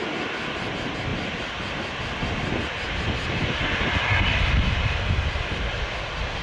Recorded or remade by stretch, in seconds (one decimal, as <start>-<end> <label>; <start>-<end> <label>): 0.0-6.4 recorded

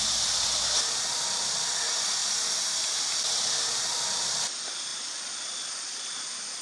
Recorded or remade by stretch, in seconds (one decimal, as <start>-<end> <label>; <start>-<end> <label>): 0.0-6.6 recorded

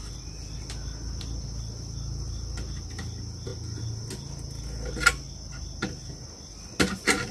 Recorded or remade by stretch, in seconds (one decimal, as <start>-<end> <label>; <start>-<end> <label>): 0.0-7.3 recorded

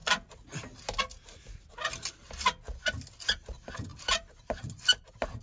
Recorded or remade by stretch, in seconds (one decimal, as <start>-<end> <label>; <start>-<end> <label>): 0.0-5.4 recorded

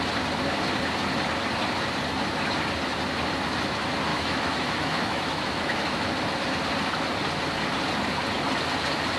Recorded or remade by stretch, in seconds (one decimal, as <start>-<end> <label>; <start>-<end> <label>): 0.0-4.1 recorded; 4.1-6.1 remade; 6.1-9.2 recorded

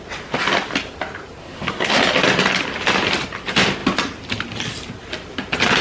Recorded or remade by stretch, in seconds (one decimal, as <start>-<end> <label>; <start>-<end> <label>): 0.0-1.4 recorded; 1.4-2.0 remade; 2.0-5.8 recorded